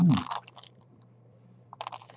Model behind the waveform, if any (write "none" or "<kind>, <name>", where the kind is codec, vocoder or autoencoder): vocoder, BigVGAN v2